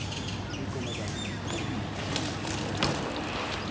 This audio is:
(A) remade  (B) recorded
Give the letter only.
B